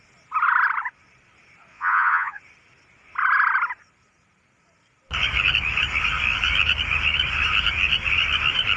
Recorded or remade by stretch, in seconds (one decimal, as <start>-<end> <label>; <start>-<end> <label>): 0.0-1.7 recorded; 1.7-2.4 remade; 2.4-8.8 recorded